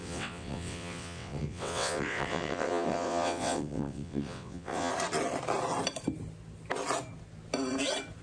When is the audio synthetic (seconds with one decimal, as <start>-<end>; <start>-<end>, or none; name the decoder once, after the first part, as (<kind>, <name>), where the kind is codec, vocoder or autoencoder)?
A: 0.0-4.9 (vocoder, WaveNeXt)